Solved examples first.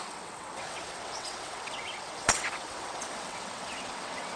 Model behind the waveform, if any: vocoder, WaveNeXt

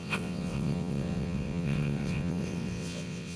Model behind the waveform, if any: vocoder, WaveNeXt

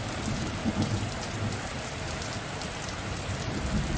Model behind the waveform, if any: none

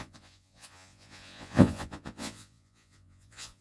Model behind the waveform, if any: vocoder, Vocos